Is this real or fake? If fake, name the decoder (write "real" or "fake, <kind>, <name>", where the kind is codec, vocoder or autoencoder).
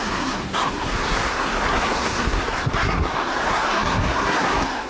fake, codec, SNAC